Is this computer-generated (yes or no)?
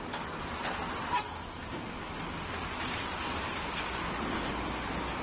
no